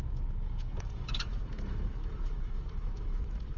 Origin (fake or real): fake